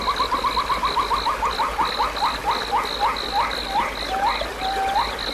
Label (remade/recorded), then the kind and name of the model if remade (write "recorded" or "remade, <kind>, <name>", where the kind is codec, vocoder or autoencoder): recorded